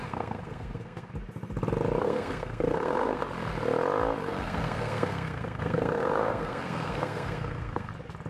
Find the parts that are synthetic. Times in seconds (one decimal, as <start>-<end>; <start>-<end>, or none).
0.0-1.1; 2.0-3.2; 4.2-7.9